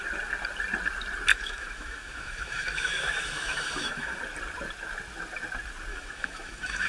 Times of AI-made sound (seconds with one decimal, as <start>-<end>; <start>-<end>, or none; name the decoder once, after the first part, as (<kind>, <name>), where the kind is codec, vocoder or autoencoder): 1.3-4.2 (autoencoder, DAC-VAE); 5.9-6.9